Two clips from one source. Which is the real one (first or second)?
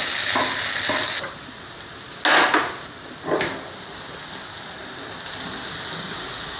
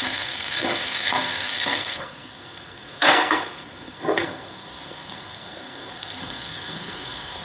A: first